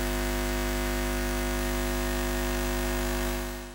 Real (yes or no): no